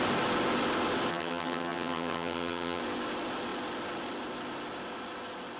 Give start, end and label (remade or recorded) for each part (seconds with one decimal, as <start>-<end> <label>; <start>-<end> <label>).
0.0-1.1 recorded; 1.1-2.8 remade; 2.8-5.6 recorded